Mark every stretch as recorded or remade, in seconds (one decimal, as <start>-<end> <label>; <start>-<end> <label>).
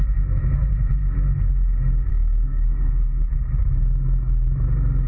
0.0-2.1 recorded; 2.1-3.3 remade; 3.3-5.1 recorded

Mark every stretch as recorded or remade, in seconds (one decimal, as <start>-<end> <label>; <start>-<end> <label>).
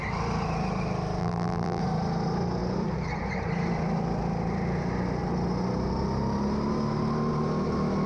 0.0-1.2 recorded; 1.2-1.8 remade; 1.8-8.1 recorded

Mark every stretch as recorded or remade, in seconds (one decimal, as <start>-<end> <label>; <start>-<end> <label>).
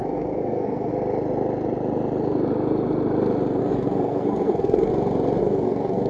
0.0-0.9 remade; 0.9-3.6 recorded; 3.6-4.9 remade; 4.9-5.4 recorded; 5.4-6.1 remade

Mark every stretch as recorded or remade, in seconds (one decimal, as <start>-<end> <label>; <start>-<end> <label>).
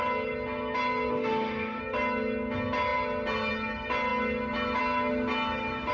0.0-1.1 recorded; 1.1-1.8 remade; 1.8-5.9 recorded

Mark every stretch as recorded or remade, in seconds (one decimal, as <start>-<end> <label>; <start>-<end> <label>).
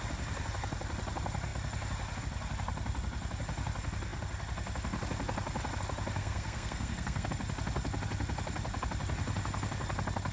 0.0-6.2 recorded; 6.2-7.3 remade; 7.3-10.3 recorded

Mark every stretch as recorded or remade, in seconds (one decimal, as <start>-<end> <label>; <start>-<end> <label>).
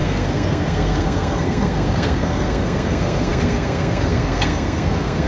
0.0-5.3 remade